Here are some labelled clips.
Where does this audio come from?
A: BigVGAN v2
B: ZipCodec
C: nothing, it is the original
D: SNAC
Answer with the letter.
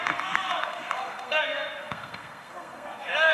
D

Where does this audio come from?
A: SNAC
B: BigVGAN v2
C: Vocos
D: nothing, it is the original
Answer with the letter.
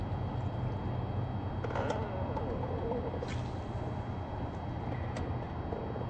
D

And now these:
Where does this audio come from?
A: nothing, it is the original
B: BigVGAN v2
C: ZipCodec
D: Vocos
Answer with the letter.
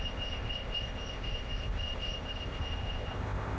C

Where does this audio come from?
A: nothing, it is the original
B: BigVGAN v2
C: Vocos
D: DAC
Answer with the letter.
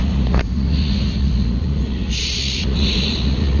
C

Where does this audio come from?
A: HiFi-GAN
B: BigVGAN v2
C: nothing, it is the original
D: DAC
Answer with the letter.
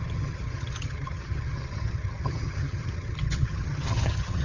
A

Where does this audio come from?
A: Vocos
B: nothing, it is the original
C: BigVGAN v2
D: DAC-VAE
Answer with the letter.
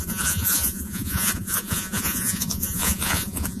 A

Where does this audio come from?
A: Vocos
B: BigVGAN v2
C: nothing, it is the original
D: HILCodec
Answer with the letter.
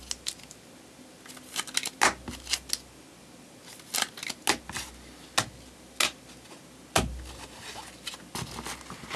C